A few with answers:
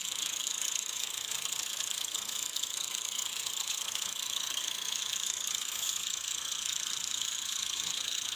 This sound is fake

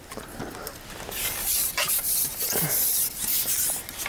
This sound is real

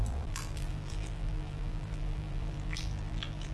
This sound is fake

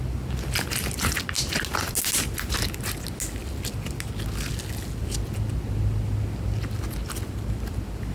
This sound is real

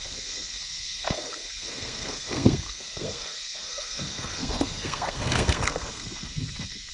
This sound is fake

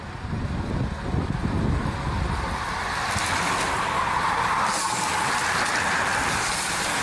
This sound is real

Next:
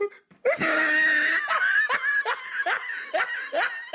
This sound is real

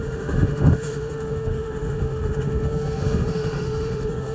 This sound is fake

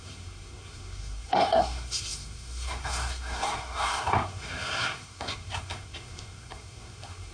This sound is fake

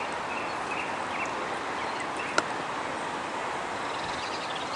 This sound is real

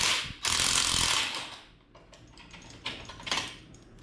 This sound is real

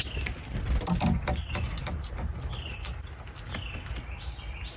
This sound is real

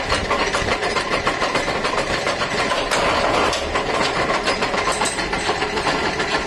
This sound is fake